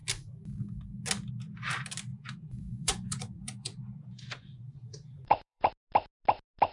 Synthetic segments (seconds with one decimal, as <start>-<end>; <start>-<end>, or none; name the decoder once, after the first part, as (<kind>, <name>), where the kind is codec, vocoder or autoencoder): 2.1-5.7 (vocoder, Vocos)